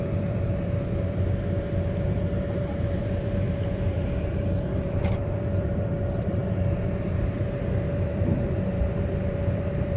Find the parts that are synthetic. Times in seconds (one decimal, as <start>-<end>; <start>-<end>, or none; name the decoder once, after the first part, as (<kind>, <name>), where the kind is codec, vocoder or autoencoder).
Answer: 0.0-6.4 (vocoder, BigVGAN v2); 7.9-10.0